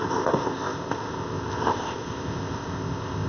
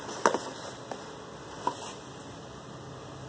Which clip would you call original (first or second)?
second